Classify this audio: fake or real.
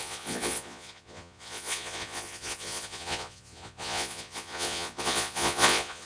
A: fake